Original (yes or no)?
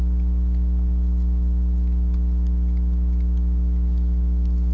yes